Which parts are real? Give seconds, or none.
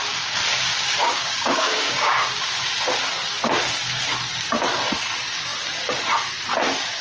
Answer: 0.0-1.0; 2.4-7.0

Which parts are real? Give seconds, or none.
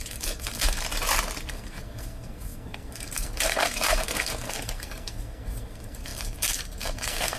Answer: 0.8-1.5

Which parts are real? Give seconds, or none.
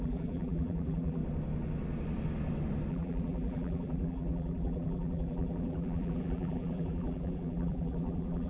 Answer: 1.2-2.9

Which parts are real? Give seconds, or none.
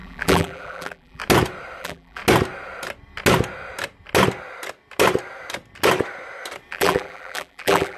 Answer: 1.2-1.8; 2.2-6.7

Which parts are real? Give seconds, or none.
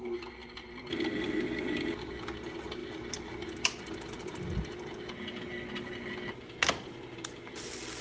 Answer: 0.0-8.0